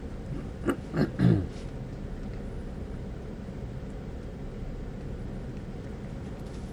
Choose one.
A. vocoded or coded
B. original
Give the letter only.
B